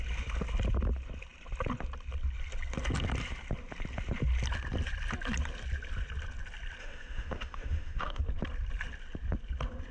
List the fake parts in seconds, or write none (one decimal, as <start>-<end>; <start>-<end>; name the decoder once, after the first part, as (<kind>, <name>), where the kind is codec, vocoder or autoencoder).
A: 6.8-8.2 (autoencoder, DAC-VAE)